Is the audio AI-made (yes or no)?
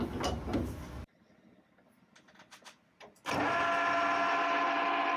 no